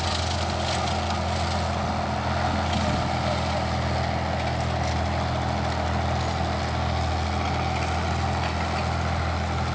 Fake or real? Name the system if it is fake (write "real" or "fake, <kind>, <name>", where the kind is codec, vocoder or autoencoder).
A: real